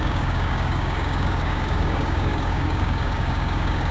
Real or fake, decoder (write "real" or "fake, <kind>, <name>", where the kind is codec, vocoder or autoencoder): fake, codec, DAC